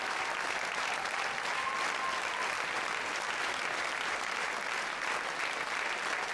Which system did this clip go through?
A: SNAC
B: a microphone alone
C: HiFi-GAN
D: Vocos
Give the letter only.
B